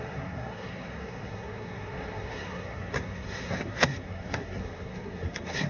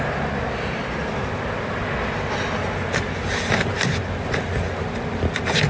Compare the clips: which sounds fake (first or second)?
first